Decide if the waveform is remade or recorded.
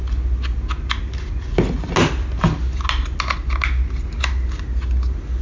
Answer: recorded